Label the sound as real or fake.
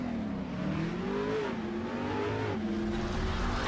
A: real